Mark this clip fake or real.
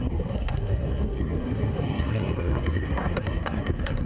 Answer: fake